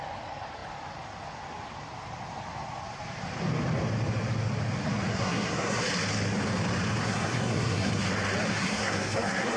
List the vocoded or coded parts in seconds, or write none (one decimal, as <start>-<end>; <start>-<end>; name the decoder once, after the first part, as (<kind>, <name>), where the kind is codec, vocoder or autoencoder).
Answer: 5.1-5.8 (codec, SNAC); 7.0-8.0; 8.5-9.6